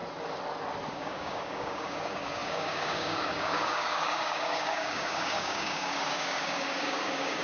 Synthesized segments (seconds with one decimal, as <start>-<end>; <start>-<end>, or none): 0.9-7.4